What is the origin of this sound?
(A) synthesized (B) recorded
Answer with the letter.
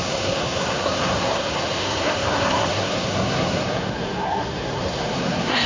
A